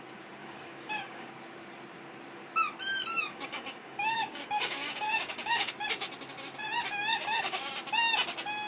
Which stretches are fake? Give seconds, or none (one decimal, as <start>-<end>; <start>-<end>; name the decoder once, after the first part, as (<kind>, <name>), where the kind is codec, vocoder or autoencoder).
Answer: 0.4-1.3 (codec, DAC); 3.1-5.7; 7.1-7.7